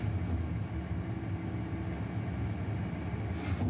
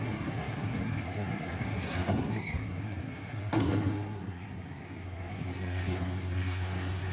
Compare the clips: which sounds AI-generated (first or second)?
second